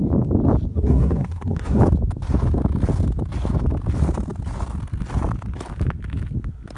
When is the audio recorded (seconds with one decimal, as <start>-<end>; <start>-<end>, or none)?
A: 0.0-0.7; 1.8-6.8